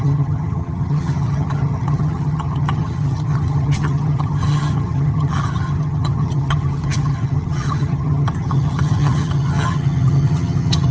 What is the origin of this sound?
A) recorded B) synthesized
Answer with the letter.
B